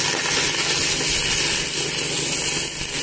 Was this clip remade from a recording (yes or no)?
no